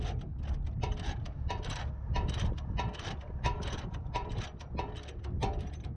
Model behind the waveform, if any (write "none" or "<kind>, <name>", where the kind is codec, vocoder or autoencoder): none